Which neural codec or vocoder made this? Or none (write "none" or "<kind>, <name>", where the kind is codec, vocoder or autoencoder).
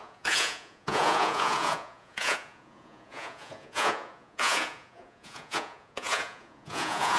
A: vocoder, Vocos